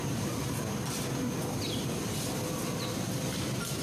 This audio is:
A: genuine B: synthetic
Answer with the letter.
A